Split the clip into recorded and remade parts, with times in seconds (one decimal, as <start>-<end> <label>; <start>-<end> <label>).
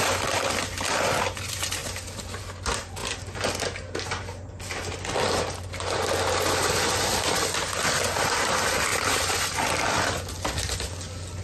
0.0-11.4 recorded